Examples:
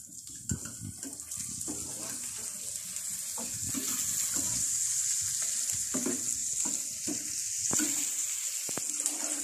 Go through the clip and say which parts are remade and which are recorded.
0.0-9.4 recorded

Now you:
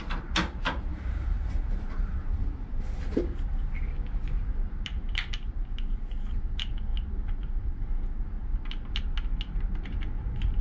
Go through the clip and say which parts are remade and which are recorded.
0.0-0.9 recorded; 0.9-3.0 remade; 3.0-10.6 recorded

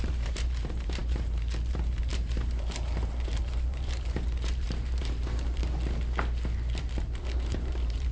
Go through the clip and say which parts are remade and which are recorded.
0.0-5.6 remade; 5.6-6.8 recorded; 6.8-8.1 remade

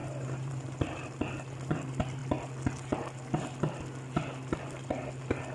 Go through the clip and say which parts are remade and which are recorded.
0.0-0.5 remade; 0.5-5.5 recorded

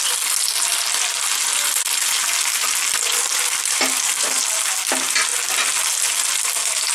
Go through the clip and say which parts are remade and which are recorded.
0.0-6.9 recorded

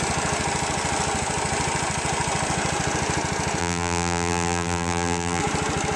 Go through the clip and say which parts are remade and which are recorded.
0.0-3.6 recorded; 3.6-5.4 remade; 5.4-6.0 recorded

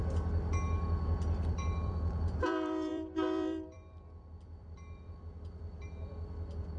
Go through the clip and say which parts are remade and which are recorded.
0.0-6.8 remade